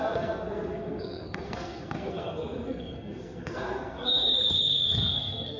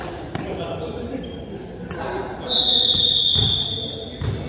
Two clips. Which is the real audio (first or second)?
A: second